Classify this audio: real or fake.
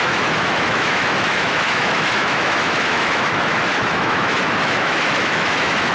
fake